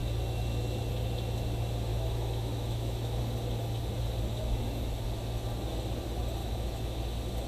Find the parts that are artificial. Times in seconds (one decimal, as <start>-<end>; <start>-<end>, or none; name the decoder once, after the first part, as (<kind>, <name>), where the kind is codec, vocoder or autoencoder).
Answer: 1.9-3.2 (autoencoder, DAC-VAE); 6.4-7.0